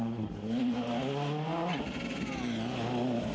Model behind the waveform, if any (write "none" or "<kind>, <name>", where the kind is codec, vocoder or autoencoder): none